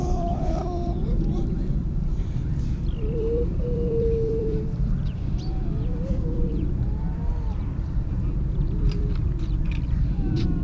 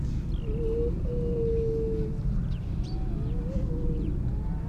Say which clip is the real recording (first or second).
second